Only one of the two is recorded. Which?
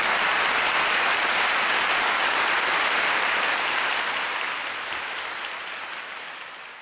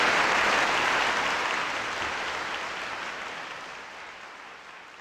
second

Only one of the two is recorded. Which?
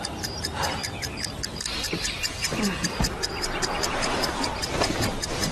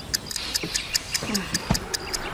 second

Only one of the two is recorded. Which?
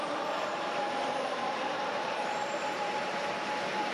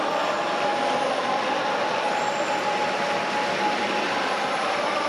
second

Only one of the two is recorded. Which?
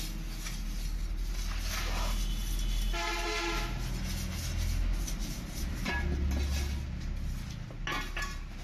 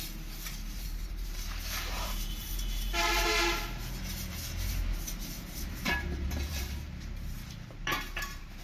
first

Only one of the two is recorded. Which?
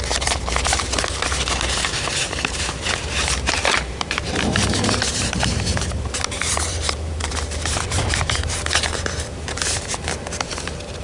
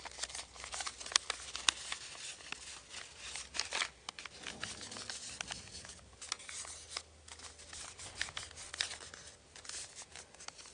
second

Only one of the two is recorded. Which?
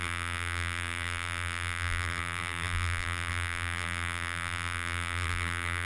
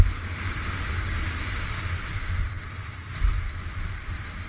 second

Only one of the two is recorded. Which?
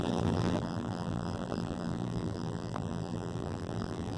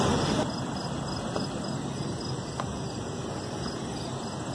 second